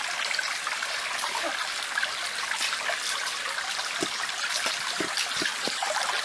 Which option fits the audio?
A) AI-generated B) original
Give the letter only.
B